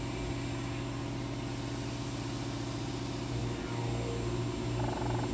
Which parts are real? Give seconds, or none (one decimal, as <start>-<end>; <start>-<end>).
0.0-5.3